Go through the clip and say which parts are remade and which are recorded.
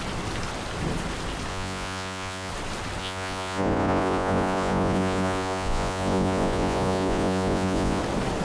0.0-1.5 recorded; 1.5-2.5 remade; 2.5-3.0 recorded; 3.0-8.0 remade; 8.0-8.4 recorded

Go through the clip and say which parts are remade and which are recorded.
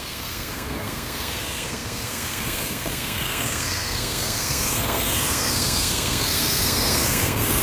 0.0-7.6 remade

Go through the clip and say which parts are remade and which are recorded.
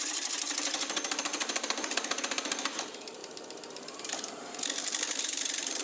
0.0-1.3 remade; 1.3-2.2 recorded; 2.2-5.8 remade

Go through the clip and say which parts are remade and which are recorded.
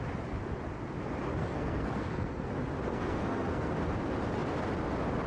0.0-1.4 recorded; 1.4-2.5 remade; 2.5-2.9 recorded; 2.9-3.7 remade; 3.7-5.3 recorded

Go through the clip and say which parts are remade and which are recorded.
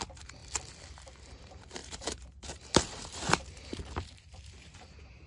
0.0-0.4 remade; 0.4-1.2 recorded; 1.2-5.3 remade